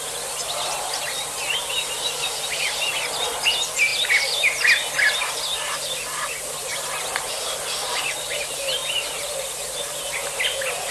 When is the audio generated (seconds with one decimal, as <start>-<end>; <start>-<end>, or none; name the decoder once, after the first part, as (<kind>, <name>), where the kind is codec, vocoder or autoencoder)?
none

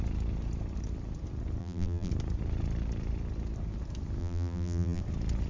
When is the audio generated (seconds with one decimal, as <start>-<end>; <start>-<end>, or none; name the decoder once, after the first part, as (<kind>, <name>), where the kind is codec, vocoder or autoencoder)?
1.6-2.1 (vocoder, BigVGAN v2); 4.2-5.0

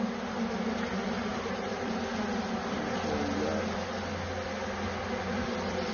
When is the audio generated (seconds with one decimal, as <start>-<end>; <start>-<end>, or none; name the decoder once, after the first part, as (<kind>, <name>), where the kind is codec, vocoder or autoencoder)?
1.3-2.0 (vocoder, BigVGAN v2)

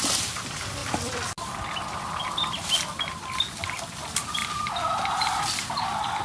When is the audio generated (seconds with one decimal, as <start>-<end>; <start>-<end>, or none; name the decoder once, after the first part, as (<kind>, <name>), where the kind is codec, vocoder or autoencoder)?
0.0-0.8 (vocoder, BigVGAN v2); 3.2-4.4; 5.1-6.2

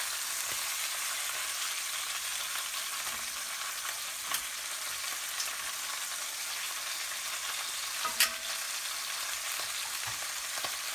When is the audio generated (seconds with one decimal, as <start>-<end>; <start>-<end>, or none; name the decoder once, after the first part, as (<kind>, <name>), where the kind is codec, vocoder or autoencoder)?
none